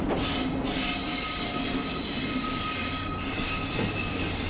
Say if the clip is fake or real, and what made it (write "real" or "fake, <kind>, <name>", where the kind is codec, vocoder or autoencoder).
real